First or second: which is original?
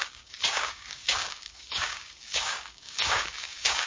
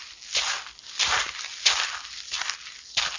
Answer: second